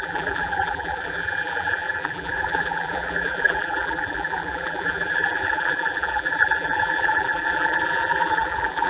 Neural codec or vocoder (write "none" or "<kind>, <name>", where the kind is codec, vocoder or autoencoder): vocoder, BigVGAN v2